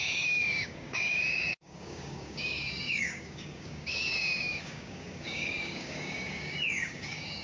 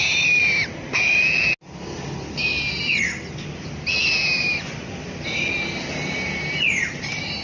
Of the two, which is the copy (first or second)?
first